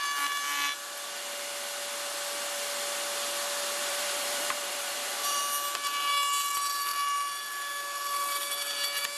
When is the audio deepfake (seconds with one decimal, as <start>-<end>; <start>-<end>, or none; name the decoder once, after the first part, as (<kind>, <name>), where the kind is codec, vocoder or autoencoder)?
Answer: 3.8-5.4 (vocoder, BigVGAN v2)